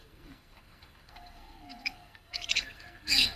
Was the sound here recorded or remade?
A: remade